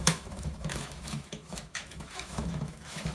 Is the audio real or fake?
fake